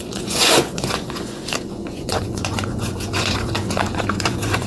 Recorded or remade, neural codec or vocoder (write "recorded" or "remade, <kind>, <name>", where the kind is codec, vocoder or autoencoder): remade, vocoder, Vocos